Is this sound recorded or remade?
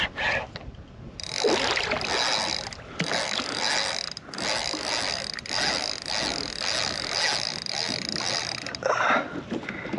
recorded